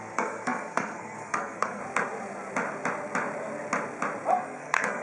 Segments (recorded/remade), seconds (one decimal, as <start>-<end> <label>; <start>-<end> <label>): 0.0-1.8 remade; 1.8-4.3 recorded; 4.3-5.0 remade